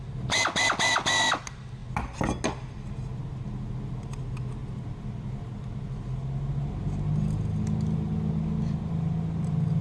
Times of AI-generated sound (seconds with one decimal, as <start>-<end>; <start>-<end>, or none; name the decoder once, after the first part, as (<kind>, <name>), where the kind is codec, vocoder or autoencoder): none